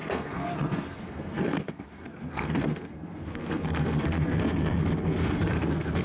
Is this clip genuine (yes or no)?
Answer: no